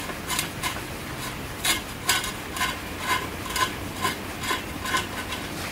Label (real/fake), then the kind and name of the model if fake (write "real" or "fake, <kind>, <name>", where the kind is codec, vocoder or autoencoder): real